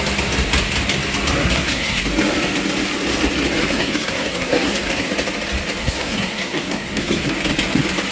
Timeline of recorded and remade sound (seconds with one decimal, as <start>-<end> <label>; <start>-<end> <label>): 0.0-1.4 recorded; 1.4-2.0 remade; 2.0-3.6 recorded; 3.6-5.1 remade; 5.1-5.8 recorded; 5.8-7.3 remade; 7.3-8.1 recorded